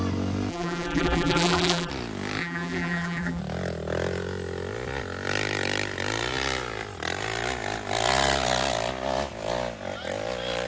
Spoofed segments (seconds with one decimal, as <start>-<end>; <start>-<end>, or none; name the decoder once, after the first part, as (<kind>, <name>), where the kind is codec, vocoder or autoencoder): 0.5-1.9 (vocoder, BigVGAN v2); 2.4-3.4